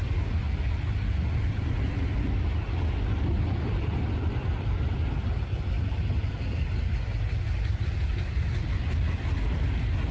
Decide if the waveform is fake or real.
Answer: real